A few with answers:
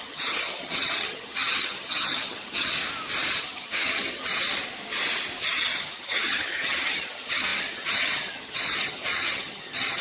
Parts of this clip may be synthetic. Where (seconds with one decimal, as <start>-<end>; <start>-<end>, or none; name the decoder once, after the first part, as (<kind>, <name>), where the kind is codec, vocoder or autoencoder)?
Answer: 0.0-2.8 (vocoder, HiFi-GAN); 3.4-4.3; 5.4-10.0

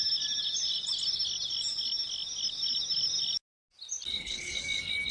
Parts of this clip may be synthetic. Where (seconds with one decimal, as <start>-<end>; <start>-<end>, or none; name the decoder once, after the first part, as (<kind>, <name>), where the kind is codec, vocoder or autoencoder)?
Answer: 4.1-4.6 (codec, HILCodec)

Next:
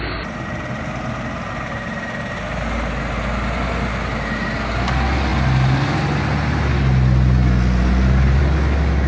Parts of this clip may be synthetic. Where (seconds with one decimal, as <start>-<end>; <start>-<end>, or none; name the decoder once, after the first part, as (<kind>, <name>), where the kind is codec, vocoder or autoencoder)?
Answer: none